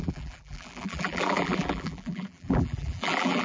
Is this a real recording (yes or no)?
no